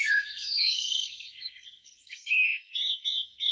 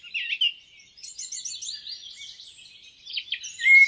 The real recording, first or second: second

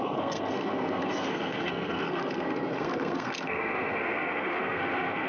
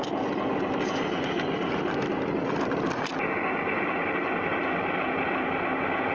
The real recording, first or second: second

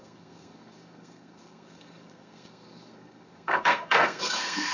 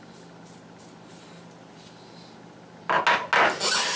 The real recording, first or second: second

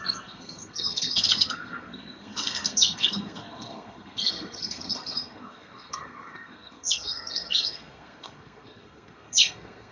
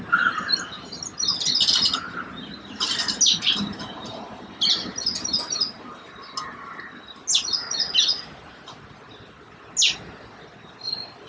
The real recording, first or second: second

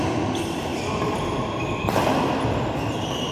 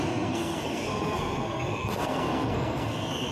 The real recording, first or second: first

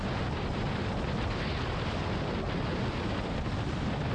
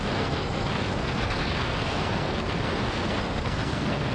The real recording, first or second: first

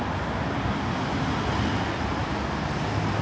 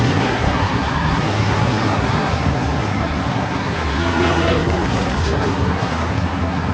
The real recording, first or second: first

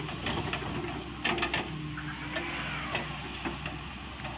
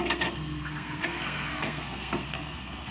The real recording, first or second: first